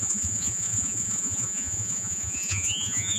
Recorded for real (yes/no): no